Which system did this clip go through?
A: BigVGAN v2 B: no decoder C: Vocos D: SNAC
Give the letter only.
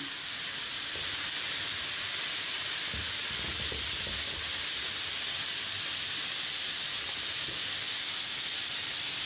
B